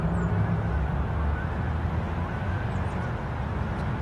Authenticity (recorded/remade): recorded